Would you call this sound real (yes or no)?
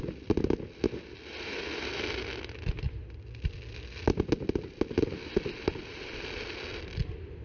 yes